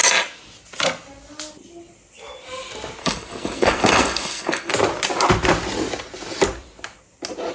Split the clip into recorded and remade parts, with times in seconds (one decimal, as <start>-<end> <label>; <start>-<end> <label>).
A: 0.0-3.0 recorded; 3.0-4.7 remade; 4.7-7.5 recorded